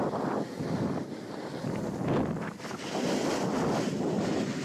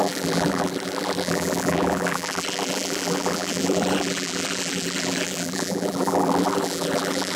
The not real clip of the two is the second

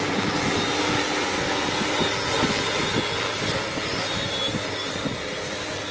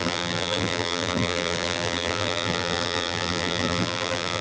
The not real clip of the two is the second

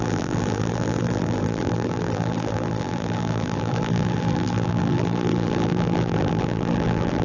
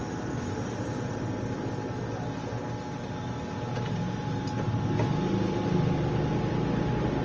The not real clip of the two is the first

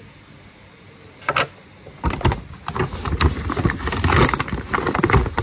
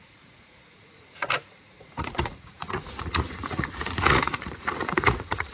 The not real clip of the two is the second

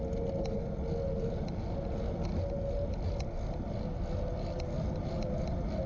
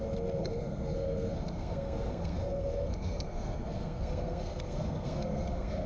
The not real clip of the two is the second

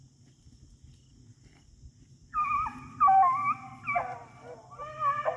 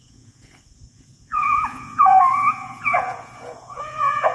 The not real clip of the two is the second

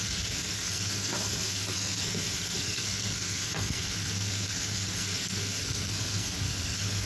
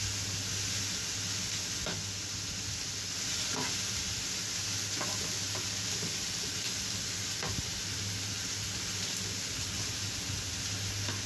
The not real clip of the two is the first